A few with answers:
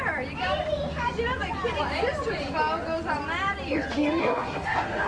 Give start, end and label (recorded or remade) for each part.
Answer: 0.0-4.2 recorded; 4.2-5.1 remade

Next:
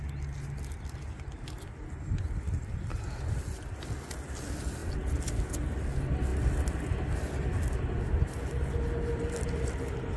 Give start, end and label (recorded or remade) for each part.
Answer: 0.0-10.2 recorded

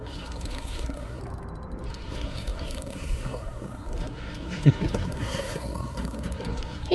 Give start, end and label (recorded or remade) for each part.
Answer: 0.0-1.2 remade; 1.2-1.9 recorded; 1.9-6.9 remade

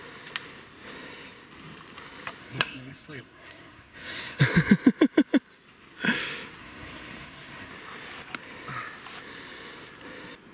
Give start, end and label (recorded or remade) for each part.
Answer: 0.0-2.4 recorded; 2.4-4.4 remade; 4.4-6.6 recorded; 6.6-7.7 remade; 7.7-10.5 recorded

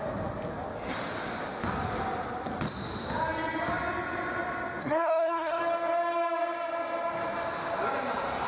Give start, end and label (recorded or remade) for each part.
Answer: 0.0-4.8 recorded; 4.8-5.6 remade; 5.6-8.5 recorded